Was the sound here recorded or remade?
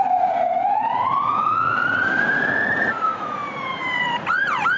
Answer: remade